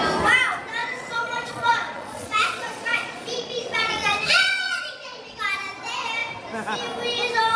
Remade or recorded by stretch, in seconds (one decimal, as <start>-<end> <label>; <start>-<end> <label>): 0.0-0.8 recorded; 0.8-5.4 remade; 5.4-7.6 recorded